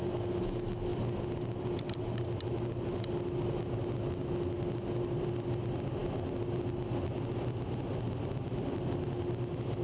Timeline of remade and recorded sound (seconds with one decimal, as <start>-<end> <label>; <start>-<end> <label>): 0.0-9.8 recorded